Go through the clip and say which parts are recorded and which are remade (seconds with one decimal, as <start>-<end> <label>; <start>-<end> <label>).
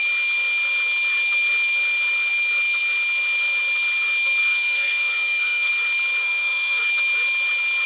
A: 0.0-4.4 recorded; 4.4-5.7 remade; 5.7-6.2 recorded; 6.2-6.9 remade; 6.9-7.9 recorded